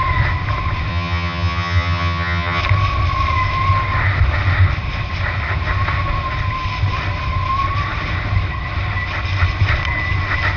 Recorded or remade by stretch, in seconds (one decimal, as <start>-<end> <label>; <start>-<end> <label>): 0.0-0.9 recorded; 0.9-2.6 remade; 2.6-10.6 recorded